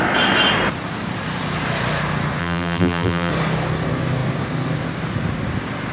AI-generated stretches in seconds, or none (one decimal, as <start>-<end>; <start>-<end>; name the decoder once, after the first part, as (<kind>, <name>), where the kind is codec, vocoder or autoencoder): 2.4-3.3 (vocoder, BigVGAN v2)